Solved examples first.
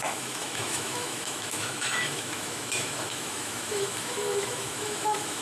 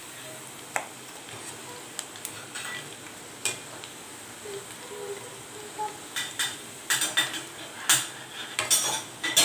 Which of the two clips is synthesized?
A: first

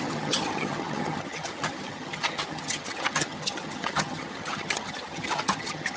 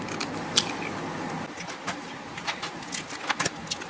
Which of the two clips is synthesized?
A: first